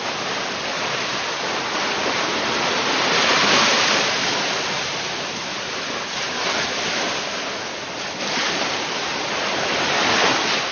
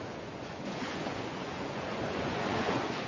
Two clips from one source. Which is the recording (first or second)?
first